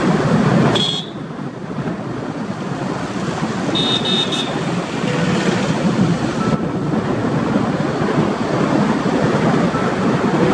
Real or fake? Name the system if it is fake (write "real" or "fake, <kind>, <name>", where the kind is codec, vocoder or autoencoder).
real